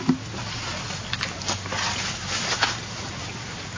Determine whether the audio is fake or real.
real